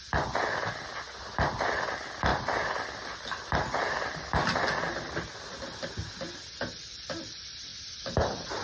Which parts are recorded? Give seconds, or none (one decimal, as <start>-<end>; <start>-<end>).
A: 0.0-8.6